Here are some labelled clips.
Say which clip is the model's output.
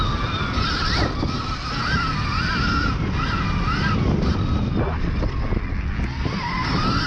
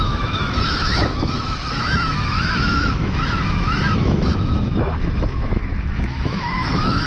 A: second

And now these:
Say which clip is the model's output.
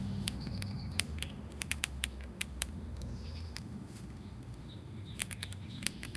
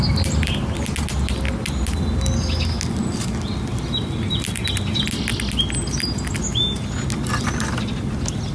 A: first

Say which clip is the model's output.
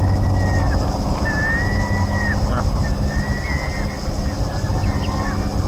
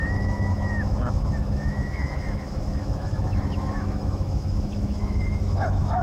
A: second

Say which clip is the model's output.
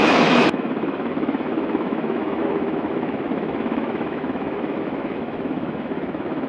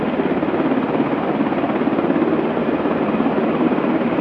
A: first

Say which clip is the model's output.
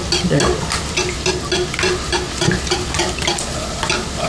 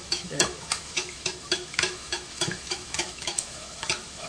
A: second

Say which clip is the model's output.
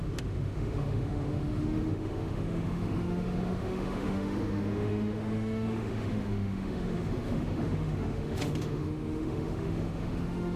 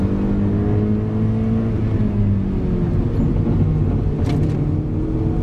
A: first